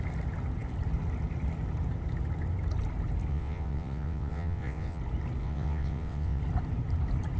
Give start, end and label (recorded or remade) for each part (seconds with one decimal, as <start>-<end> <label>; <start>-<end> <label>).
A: 0.0-3.3 recorded; 3.3-5.0 remade; 5.0-5.4 recorded; 5.4-6.4 remade; 6.4-7.4 recorded